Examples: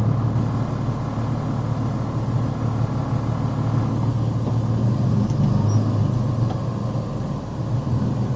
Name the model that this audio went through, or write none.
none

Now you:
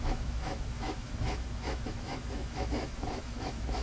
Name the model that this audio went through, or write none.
autoencoder, DAC-VAE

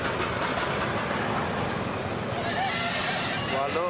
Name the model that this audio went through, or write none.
none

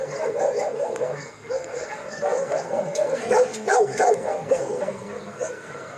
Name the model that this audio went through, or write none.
codec, SNAC